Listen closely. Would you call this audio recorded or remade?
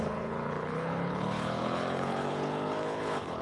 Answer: remade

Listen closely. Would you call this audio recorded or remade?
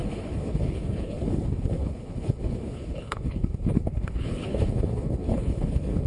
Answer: remade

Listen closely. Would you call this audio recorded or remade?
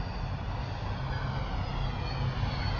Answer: recorded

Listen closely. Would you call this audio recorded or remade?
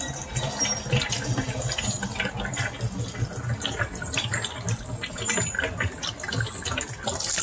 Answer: recorded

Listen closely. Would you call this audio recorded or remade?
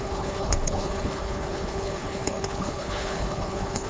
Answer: remade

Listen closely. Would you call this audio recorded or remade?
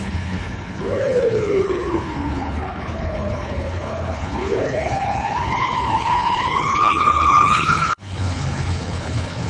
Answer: remade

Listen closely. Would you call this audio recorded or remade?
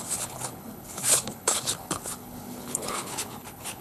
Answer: remade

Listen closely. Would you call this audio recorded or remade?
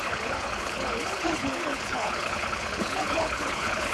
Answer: remade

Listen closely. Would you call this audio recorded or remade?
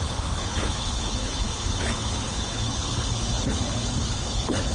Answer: remade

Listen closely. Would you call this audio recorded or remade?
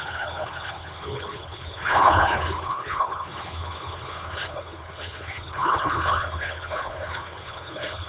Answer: remade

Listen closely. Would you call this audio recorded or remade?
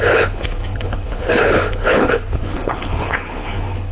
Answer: remade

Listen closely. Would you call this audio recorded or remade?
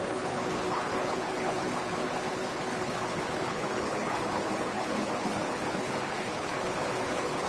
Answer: remade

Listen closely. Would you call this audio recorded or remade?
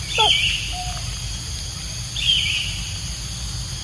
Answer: recorded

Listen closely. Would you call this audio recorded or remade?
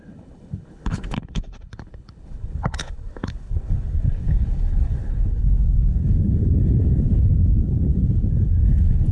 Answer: remade